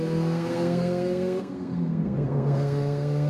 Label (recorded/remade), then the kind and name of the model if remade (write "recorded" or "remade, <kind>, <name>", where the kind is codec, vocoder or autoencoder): remade, codec, SNAC